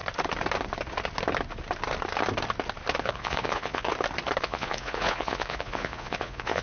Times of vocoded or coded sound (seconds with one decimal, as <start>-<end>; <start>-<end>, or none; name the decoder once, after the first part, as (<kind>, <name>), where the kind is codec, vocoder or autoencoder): 3.0-3.9 (vocoder, Vocos); 4.4-6.6